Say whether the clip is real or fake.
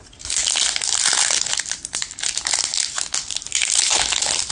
real